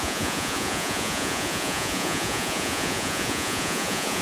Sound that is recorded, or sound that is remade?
remade